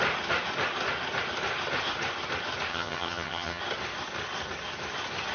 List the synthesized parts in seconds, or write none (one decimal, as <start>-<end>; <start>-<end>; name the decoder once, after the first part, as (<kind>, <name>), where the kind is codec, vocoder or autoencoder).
2.7-3.6 (vocoder, HiFi-GAN)